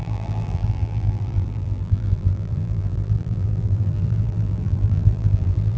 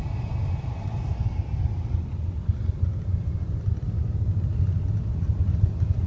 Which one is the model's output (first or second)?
first